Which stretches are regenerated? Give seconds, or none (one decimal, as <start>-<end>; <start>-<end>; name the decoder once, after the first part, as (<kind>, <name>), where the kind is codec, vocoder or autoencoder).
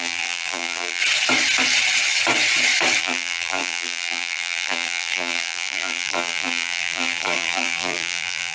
0.0-1.0 (vocoder, BigVGAN v2); 3.0-8.5